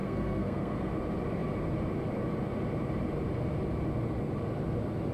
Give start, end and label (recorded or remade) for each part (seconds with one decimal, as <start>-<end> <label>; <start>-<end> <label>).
0.0-0.9 remade; 0.9-5.1 recorded